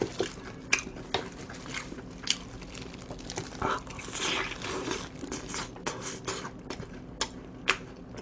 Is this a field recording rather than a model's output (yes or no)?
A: yes